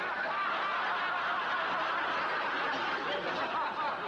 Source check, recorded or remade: recorded